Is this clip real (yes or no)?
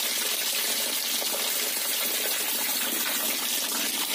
yes